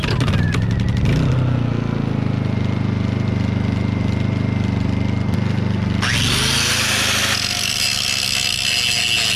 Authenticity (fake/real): real